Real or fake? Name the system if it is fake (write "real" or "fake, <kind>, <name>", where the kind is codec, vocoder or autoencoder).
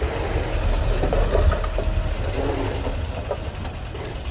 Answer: real